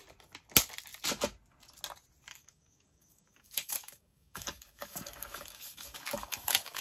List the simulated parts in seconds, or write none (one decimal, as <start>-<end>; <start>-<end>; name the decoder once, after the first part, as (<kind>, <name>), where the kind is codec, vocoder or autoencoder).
2.3-6.8 (codec, DAC)